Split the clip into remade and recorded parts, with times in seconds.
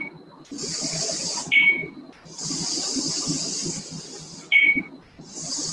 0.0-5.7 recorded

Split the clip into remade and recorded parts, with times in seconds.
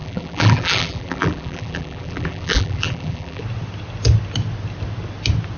0.0-3.4 remade; 3.4-5.6 recorded